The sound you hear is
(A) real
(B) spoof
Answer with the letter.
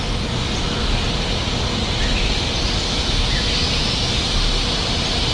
A